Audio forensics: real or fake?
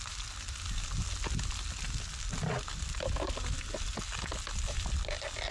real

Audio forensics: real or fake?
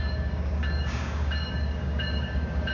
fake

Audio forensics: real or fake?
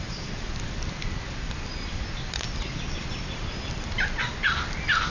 real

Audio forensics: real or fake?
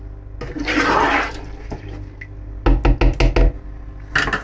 real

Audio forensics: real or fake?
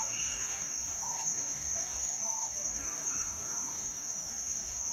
fake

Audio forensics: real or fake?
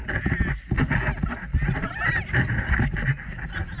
real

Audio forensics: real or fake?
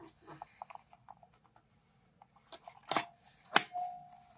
real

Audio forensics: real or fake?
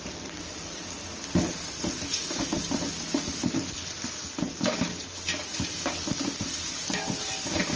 real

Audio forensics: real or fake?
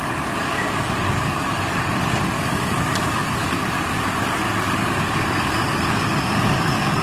fake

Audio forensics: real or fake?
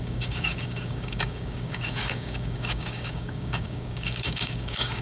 fake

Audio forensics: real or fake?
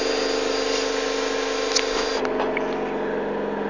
real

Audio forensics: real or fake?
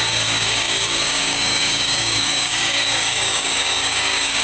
fake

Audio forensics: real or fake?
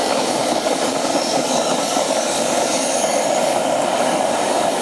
fake